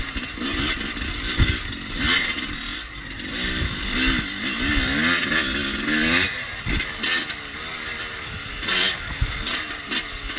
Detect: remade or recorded recorded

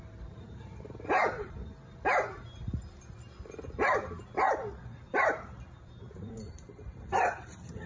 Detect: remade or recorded remade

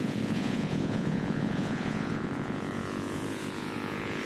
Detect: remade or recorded remade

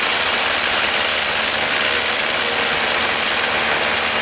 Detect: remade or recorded recorded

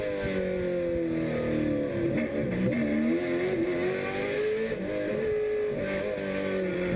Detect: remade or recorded recorded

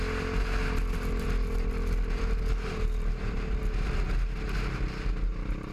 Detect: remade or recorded recorded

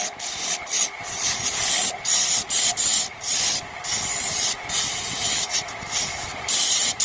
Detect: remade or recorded recorded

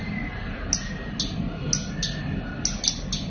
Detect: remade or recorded recorded